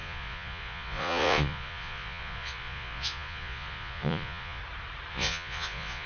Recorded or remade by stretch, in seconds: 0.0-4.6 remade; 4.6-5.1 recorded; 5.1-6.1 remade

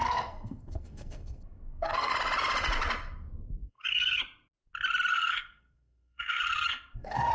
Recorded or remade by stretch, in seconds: 0.0-2.1 remade; 2.1-3.6 recorded; 3.6-4.2 remade; 4.2-5.1 recorded; 5.1-7.3 remade

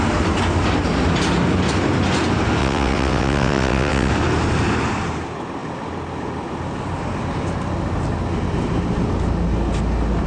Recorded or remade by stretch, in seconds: 0.0-2.6 recorded; 2.6-4.1 remade; 4.1-10.3 recorded

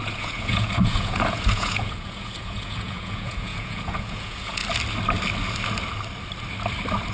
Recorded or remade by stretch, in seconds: 0.0-4.6 remade; 4.6-7.1 recorded